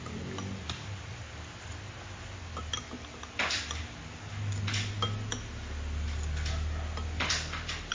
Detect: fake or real real